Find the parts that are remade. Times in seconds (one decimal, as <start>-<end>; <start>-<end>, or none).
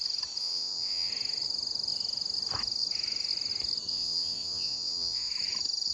0.4-1.1; 3.9-5.3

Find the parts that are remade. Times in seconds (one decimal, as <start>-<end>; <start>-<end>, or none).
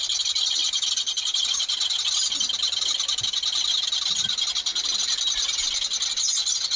none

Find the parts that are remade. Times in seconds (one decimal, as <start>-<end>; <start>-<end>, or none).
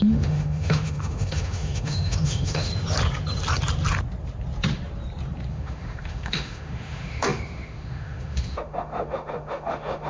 0.0-2.7; 5.5-10.1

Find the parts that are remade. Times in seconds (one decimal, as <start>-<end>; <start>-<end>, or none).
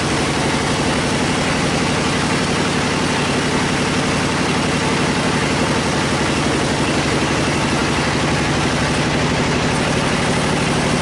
none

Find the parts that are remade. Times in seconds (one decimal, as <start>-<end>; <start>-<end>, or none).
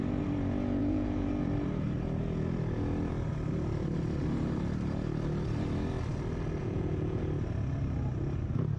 0.8-1.3; 6.6-7.2